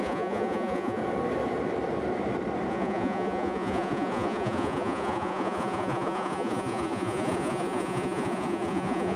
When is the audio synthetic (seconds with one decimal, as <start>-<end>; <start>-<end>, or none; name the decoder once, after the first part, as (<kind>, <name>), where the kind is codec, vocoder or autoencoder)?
0.0-1.0 (vocoder, Vocos); 2.7-9.2